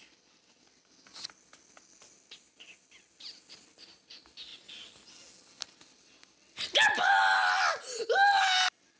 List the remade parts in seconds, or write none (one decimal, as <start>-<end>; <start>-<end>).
none